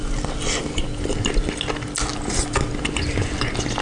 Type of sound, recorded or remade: recorded